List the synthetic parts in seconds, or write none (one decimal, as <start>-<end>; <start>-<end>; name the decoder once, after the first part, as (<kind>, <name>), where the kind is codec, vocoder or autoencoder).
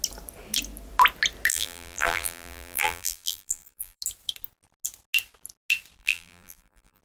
1.5-4.0 (vocoder, BigVGAN v2); 6.0-7.0